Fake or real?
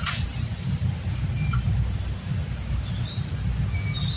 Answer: real